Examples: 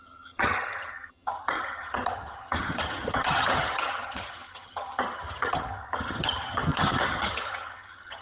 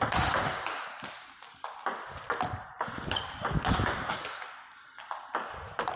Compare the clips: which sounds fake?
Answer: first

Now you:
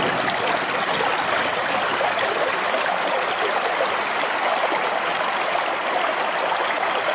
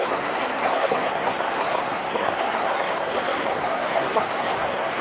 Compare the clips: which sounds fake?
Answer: second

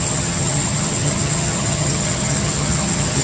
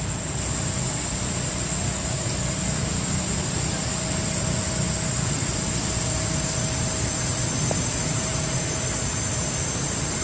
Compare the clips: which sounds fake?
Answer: first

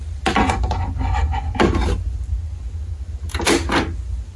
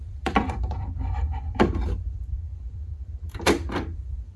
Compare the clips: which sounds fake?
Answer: second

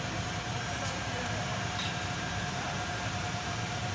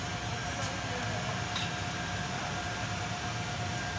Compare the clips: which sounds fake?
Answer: first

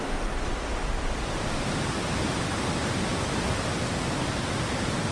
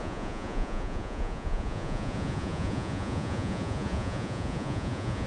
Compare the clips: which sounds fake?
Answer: second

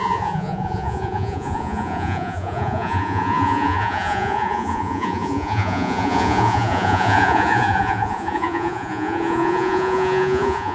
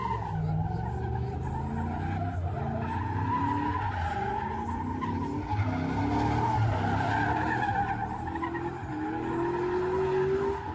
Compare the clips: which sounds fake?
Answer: first